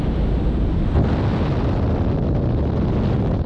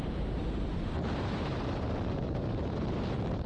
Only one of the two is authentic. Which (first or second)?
first